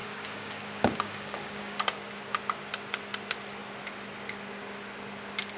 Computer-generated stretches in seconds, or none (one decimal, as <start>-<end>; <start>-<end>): 0.0-1.8